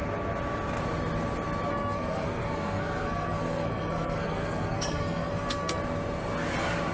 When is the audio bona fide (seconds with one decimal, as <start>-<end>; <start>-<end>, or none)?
0.0-1.7; 5.8-6.9